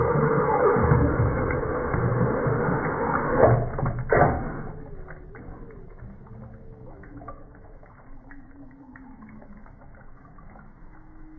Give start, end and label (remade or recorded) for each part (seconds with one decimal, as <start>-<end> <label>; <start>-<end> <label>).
0.0-2.1 remade; 2.1-6.9 recorded; 6.9-11.4 remade